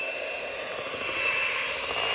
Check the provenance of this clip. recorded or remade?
recorded